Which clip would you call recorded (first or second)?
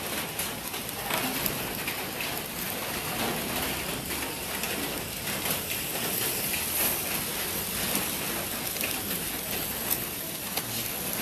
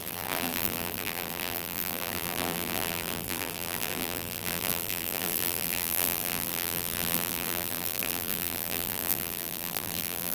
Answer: first